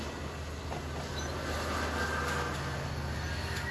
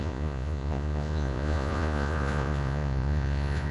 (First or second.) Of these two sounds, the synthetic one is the second